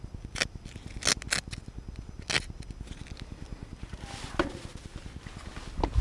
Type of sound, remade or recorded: recorded